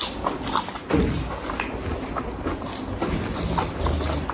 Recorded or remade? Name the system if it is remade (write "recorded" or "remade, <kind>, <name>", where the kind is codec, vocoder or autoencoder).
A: recorded